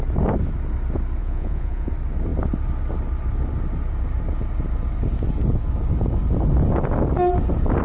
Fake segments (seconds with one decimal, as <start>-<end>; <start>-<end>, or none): 1.2-1.9